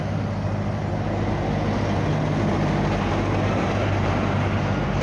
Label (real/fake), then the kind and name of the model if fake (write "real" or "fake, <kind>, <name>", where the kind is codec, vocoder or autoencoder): real